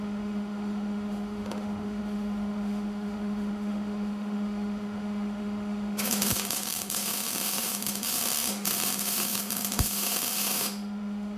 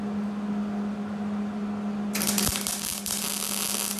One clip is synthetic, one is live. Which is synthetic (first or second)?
first